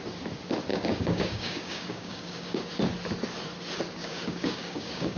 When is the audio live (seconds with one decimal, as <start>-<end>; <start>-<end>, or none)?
0.0-0.7; 2.6-4.0